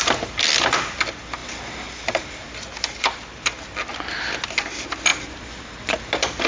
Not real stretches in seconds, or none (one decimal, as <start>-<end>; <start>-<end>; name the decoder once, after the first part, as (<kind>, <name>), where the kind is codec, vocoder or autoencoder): none